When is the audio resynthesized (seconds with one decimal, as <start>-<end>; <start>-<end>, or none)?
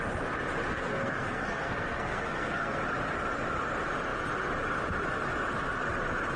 0.7-2.8